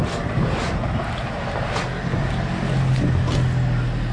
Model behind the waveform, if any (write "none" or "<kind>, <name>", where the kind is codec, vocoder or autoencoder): none